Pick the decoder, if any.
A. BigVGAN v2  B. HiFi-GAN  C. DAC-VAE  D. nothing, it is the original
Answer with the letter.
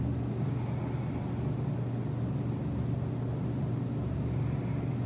D